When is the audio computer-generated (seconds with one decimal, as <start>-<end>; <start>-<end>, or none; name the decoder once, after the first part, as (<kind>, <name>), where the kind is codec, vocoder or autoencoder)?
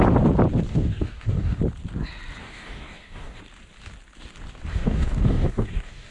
0.7-1.6 (codec, DAC); 2.4-3.4; 4.7-6.1